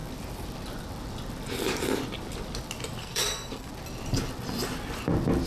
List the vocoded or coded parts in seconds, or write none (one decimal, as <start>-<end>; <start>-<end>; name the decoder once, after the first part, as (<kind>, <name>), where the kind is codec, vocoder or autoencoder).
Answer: 3.0-3.7 (codec, SNAC)